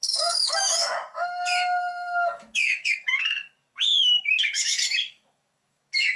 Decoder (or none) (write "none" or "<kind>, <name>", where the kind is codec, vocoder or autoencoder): codec, DAC